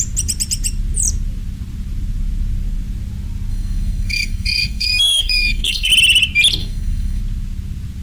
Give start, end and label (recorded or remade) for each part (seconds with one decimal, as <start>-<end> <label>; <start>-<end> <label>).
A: 0.0-3.5 recorded; 3.5-5.9 remade; 5.9-6.6 recorded; 6.6-7.2 remade; 7.2-8.0 recorded